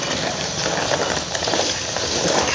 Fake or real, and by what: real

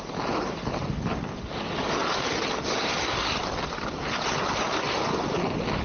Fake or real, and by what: real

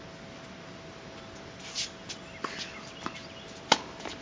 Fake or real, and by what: real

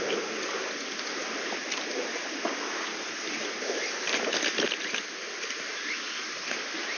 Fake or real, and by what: real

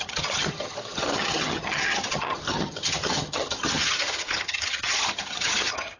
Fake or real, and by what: fake, vocoder, HiFi-GAN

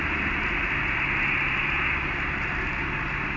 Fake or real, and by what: real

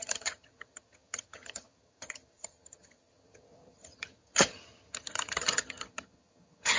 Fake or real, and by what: fake, vocoder, HiFi-GAN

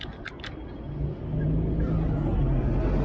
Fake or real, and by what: real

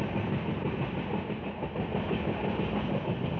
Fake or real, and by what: real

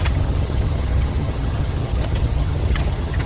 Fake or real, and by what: fake, vocoder, HiFi-GAN